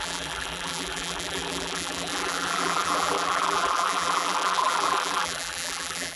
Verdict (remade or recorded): remade